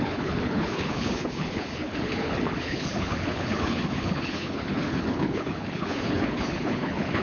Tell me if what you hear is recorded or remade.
remade